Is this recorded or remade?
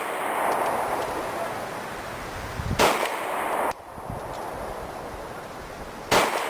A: recorded